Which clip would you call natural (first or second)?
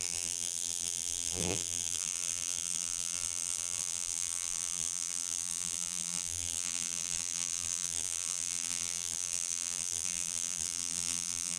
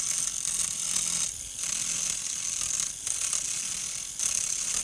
second